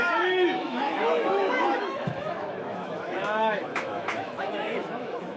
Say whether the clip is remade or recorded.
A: remade